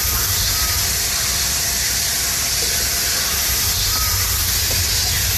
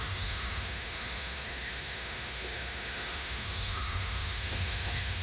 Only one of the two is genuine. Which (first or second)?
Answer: first